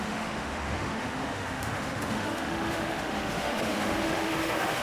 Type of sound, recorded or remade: remade